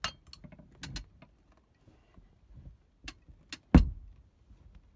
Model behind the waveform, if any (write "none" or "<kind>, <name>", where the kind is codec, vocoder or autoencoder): none